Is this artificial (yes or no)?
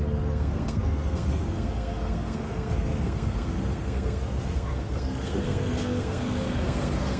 yes